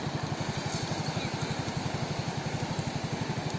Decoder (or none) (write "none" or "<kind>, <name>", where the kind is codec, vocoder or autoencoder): none